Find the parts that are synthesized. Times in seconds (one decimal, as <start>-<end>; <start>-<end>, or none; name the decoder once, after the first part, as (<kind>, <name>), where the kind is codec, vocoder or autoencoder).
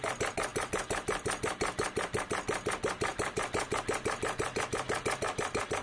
0.5-2.2 (vocoder, BigVGAN v2); 3.1-3.8